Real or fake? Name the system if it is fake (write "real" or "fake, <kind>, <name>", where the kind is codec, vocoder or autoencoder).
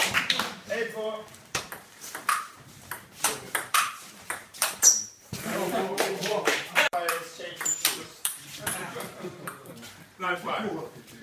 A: fake, vocoder, BigVGAN v2